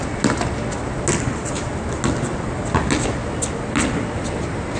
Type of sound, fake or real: real